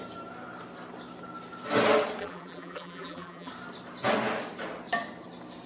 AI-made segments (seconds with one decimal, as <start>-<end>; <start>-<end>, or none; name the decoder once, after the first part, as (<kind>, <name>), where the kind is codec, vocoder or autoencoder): 2.2-3.5 (vocoder, BigVGAN v2)